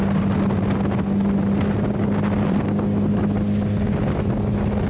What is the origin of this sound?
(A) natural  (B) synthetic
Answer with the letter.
A